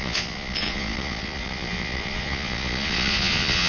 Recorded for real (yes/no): no